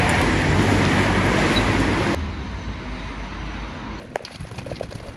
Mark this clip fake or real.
real